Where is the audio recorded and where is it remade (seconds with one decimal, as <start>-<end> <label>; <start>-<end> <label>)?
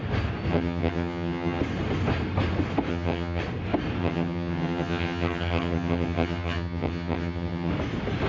0.0-0.5 recorded; 0.5-1.6 remade; 1.6-2.9 recorded; 2.9-3.4 remade; 3.4-4.0 recorded; 4.0-7.7 remade; 7.7-8.3 recorded